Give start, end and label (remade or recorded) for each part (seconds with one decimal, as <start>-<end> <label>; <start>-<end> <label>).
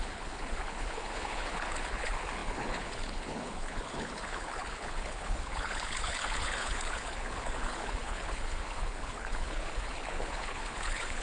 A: 0.0-11.2 remade